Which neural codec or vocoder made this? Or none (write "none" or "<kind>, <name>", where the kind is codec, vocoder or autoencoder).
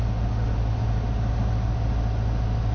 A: none